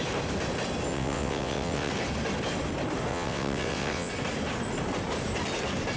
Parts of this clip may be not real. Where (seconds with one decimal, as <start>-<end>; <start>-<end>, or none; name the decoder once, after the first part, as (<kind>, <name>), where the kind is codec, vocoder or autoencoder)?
0.9-1.9 (vocoder, WaveNeXt); 3.1-4.1